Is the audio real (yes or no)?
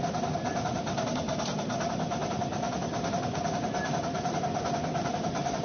yes